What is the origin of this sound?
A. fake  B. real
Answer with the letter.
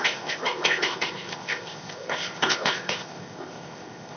A